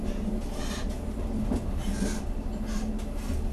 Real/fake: real